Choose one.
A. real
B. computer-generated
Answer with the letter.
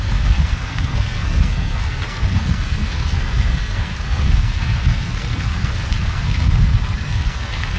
B